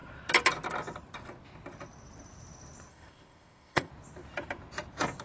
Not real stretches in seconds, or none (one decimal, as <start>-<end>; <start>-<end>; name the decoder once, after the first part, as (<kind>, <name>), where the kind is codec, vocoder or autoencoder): 2.9-3.9 (codec, ZipCodec)